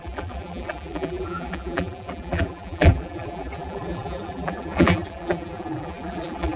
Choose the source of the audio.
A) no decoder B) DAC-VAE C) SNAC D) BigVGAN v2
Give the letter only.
D